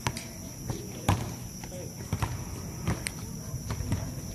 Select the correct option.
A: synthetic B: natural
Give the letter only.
B